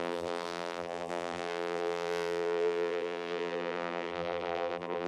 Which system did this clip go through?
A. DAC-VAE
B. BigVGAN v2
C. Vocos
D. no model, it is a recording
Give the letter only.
B